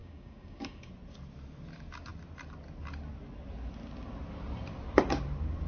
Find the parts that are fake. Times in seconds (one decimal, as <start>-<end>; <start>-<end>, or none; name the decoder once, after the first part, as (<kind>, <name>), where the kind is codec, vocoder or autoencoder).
0.0-0.9 (codec, DAC)